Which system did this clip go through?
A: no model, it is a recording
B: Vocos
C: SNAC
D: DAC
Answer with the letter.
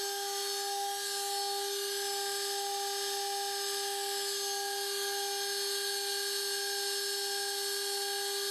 A